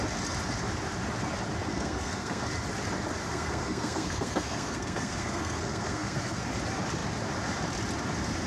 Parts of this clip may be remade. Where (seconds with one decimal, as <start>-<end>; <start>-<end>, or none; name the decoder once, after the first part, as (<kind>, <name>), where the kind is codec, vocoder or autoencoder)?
1.7-2.4 (codec, SNAC); 3.2-6.4